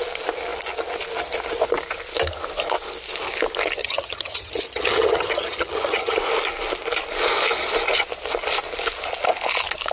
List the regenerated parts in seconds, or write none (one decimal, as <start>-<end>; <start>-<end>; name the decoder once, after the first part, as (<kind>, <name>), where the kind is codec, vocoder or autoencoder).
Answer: 3.8-6.2 (vocoder, HiFi-GAN)